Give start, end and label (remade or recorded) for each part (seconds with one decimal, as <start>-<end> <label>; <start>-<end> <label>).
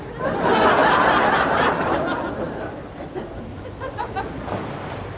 0.0-5.2 recorded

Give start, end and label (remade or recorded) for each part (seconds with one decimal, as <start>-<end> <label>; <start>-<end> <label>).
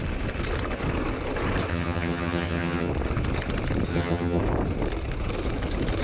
0.0-1.7 recorded; 1.7-2.9 remade; 2.9-3.9 recorded; 3.9-4.4 remade; 4.4-6.0 recorded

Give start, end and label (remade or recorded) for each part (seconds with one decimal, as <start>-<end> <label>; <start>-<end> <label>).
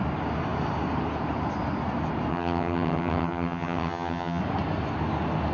0.0-2.3 recorded; 2.3-4.4 remade; 4.4-5.5 recorded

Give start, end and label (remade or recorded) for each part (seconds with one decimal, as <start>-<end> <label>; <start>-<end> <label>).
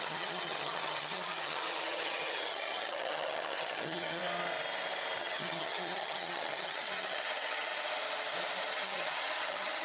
0.0-4.2 remade; 4.2-5.2 recorded; 5.2-7.7 remade; 7.7-8.7 recorded; 8.7-9.8 remade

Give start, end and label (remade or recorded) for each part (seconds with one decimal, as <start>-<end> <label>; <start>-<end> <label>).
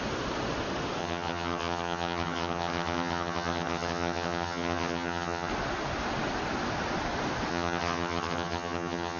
0.0-1.0 recorded; 1.0-5.5 remade; 5.5-7.5 recorded; 7.5-9.2 remade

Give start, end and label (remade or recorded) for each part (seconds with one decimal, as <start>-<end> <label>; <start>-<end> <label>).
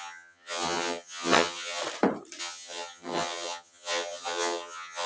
0.0-1.8 remade; 1.8-2.4 recorded; 2.4-5.1 remade